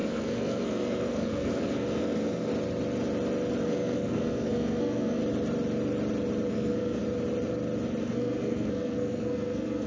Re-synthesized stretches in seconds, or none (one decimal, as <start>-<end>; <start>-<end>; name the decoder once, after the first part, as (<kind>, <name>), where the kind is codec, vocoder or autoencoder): 0.0-2.5 (codec, SNAC); 3.6-5.2; 6.5-7.0; 8.0-9.9